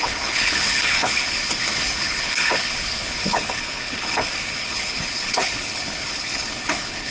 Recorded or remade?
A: remade